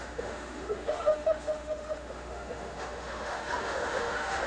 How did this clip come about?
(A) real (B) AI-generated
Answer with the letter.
B